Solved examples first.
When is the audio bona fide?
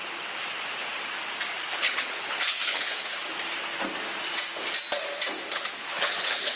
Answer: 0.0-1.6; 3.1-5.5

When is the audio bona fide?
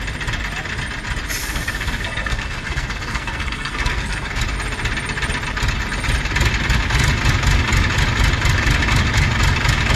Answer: 0.0-1.4; 4.4-10.0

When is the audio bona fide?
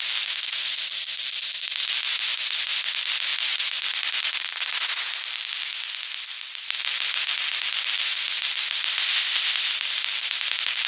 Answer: 0.0-8.9; 9.7-10.9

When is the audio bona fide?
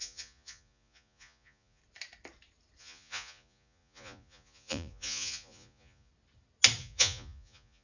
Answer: 1.8-2.8; 6.1-6.8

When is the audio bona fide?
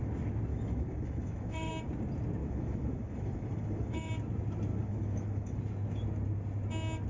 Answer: 0.0-0.5; 1.7-2.4; 4.1-4.7; 5.6-7.1